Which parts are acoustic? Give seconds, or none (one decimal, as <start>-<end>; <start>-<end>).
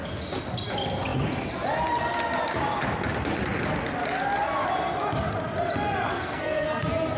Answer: 0.0-6.1; 6.8-7.2